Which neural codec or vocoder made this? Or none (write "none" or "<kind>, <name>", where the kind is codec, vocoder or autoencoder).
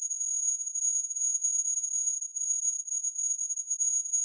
vocoder, BigVGAN v2